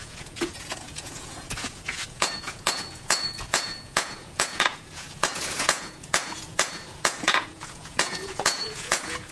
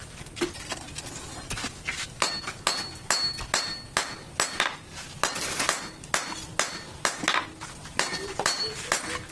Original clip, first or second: second